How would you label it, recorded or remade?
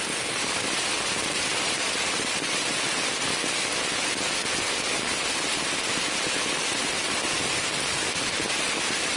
remade